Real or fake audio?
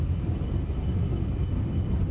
real